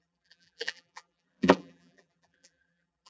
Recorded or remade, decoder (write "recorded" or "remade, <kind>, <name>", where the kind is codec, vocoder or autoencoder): remade, vocoder, BigVGAN v2